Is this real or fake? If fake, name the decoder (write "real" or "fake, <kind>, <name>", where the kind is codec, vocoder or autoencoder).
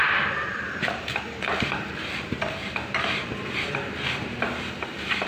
fake, vocoder, BigVGAN v2